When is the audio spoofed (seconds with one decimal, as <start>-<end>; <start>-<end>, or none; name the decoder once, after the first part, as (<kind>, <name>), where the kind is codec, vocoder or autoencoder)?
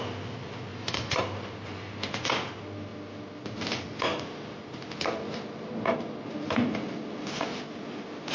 0.7-1.2 (autoencoder, DAC-VAE)